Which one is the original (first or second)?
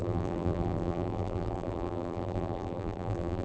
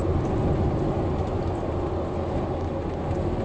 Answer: second